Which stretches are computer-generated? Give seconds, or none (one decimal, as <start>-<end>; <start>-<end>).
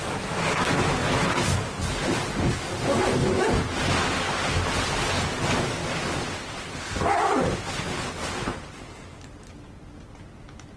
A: none